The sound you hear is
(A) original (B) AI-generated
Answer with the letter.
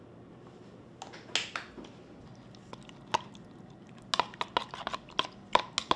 A